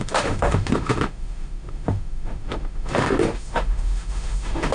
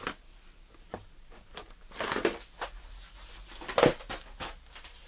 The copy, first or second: first